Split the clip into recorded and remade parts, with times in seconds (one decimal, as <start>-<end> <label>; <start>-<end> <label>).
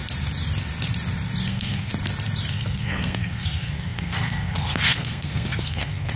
0.0-1.5 recorded; 1.5-1.9 remade; 1.9-2.5 recorded; 2.5-6.2 remade